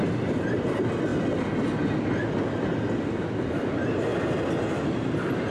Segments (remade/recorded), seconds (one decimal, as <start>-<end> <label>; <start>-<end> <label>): 0.0-5.5 recorded